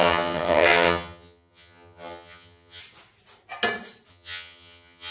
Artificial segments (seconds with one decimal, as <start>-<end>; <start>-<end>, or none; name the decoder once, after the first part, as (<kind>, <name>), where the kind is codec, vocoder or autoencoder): 0.0-2.8 (vocoder, HiFi-GAN); 4.1-5.1